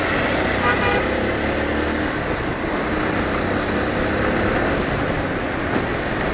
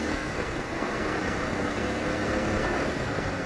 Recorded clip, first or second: first